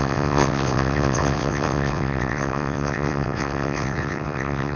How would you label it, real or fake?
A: fake